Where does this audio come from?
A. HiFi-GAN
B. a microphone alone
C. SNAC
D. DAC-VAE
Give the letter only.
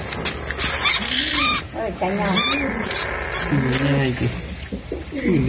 B